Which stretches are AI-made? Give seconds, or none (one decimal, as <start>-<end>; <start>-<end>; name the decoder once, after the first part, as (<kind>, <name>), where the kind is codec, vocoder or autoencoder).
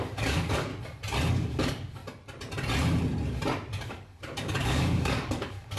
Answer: 0.0-0.7 (codec, DAC); 1.3-2.0; 3.8-5.8